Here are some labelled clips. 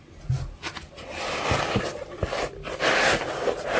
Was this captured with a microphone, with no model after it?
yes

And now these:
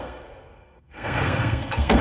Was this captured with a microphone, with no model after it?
no